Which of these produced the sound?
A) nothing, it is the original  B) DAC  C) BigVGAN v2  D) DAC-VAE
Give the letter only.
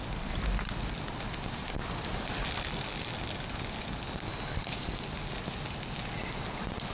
A